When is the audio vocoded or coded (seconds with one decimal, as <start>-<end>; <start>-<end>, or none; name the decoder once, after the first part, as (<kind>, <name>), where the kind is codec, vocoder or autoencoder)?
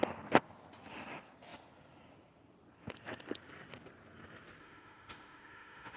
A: 4.6-6.0 (autoencoder, DAC-VAE)